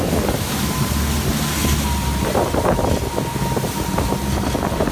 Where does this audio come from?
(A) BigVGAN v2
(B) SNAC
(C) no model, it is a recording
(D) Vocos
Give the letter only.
C